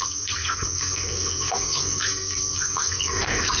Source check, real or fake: fake